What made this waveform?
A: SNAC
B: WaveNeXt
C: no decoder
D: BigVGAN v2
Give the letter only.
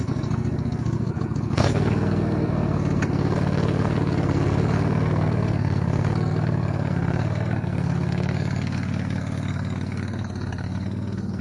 A